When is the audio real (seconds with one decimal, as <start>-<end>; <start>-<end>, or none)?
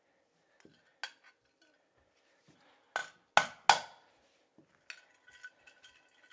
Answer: 0.0-6.3